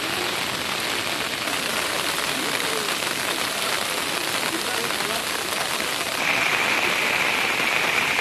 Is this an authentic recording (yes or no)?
no